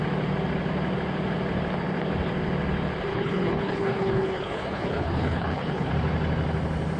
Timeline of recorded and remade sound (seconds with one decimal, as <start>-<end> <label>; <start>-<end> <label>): 0.0-3.1 recorded; 3.1-5.9 remade; 5.9-7.0 recorded